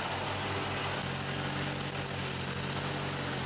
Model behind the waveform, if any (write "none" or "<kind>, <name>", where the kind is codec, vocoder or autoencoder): none